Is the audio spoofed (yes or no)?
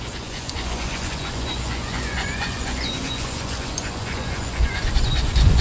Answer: yes